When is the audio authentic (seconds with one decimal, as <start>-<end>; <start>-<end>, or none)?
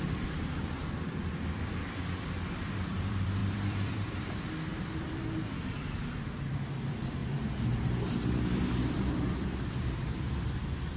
none